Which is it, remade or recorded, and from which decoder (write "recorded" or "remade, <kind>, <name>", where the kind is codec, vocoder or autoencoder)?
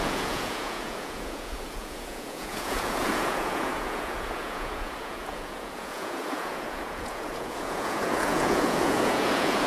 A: remade, vocoder, Vocos